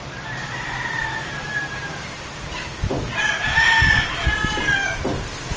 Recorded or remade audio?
remade